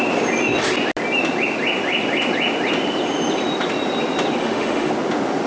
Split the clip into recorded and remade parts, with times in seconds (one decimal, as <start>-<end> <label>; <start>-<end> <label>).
0.0-4.4 recorded; 4.4-4.9 remade; 4.9-5.5 recorded